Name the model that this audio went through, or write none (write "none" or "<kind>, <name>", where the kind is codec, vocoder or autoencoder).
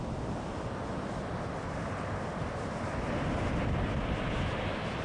none